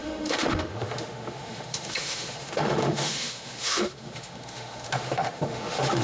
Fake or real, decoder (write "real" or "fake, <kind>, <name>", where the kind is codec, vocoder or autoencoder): fake, autoencoder, DAC-VAE